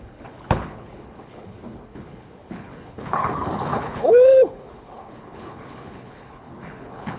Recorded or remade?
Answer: remade